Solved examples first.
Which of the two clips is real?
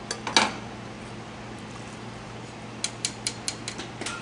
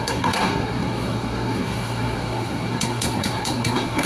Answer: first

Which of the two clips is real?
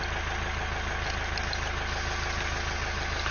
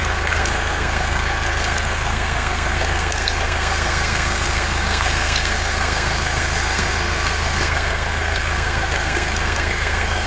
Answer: first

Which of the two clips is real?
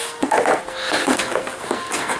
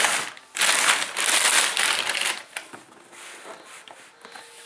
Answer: second